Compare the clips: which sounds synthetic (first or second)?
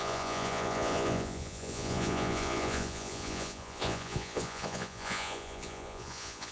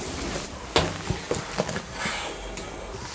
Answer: first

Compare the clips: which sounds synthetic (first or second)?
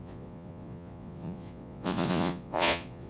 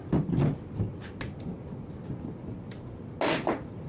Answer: first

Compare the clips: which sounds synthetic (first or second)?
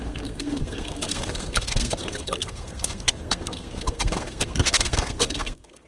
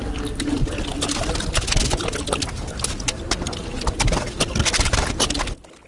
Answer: first